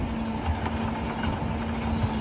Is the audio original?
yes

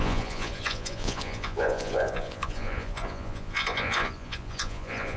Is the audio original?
no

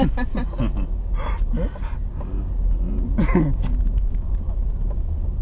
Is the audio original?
yes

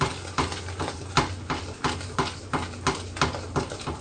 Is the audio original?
yes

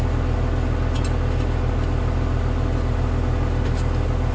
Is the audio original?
yes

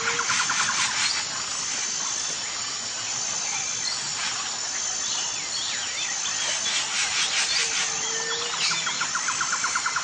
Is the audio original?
yes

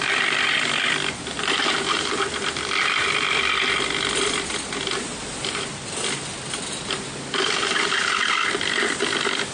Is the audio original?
yes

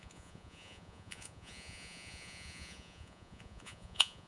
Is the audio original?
no